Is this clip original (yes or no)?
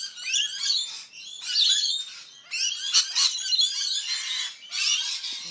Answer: yes